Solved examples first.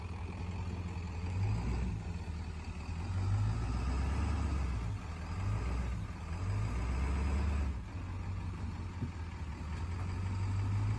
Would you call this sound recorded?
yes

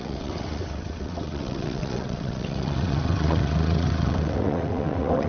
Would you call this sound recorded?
no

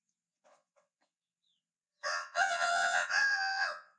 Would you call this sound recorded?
no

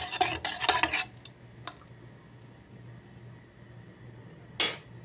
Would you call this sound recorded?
yes